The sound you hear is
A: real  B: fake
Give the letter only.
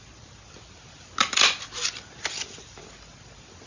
A